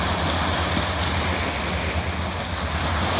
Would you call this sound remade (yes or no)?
no